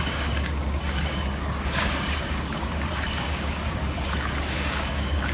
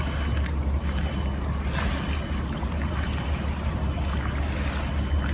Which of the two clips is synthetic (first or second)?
first